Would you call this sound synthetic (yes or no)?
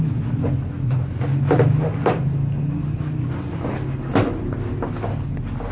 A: no